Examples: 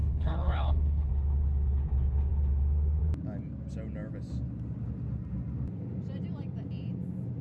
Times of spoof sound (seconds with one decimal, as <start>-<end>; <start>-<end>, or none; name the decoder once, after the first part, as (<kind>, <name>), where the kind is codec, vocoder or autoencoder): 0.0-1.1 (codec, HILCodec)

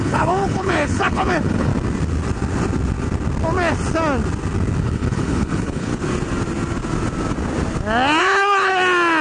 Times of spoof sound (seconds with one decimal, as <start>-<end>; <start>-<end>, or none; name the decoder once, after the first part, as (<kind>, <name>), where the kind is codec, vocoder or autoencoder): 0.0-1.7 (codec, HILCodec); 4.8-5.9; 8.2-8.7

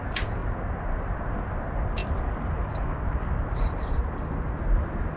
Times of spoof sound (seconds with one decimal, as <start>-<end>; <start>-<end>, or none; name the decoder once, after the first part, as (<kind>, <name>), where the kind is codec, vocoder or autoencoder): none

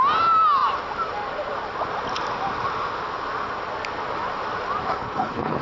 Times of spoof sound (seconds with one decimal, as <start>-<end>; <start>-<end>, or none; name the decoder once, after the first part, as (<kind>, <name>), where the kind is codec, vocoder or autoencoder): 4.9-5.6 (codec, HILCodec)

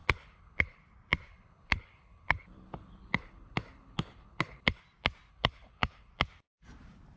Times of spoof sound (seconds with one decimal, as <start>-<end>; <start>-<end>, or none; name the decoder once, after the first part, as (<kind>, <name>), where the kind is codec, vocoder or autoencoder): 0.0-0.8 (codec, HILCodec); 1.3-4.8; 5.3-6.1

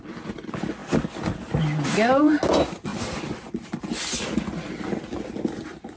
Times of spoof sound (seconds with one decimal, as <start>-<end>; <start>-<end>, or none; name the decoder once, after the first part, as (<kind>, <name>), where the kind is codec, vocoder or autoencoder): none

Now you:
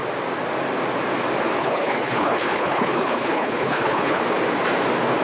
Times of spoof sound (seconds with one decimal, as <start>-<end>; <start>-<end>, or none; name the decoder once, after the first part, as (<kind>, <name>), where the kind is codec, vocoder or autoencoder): 1.6-4.2 (codec, HILCodec)

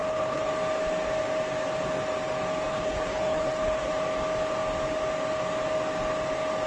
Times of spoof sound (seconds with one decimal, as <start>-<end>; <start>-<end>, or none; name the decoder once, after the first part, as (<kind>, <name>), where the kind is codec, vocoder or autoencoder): 0.0-0.5 (codec, HILCodec); 2.7-3.9